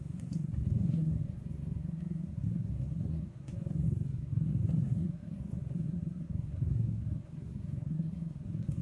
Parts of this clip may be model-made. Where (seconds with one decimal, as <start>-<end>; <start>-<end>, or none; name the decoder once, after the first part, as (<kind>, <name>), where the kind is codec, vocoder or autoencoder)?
0.0-8.8 (codec, SNAC)